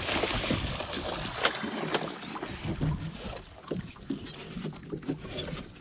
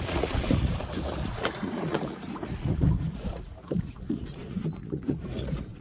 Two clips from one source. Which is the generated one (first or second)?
second